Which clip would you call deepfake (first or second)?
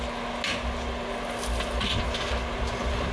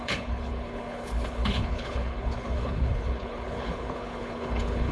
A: second